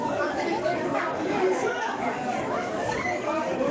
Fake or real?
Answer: fake